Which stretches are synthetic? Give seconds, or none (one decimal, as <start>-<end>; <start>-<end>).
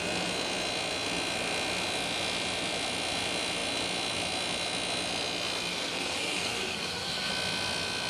5.7-7.3